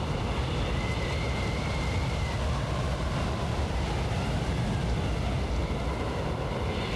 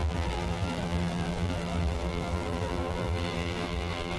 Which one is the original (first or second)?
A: first